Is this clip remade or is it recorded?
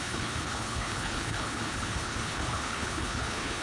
remade